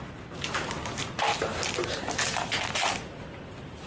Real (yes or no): yes